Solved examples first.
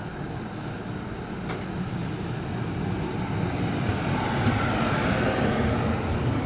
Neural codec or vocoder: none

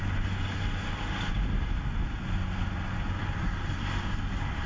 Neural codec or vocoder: none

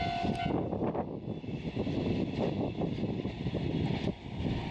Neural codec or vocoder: none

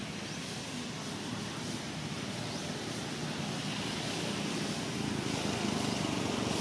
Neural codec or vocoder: none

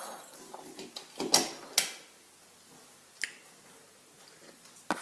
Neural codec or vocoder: none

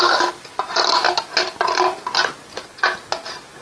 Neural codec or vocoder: none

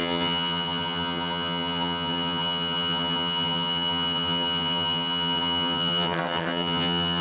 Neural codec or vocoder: vocoder, HiFi-GAN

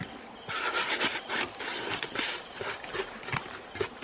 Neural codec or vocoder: none